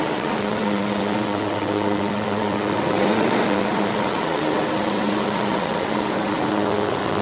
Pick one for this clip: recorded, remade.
remade